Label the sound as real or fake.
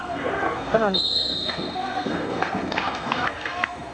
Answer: fake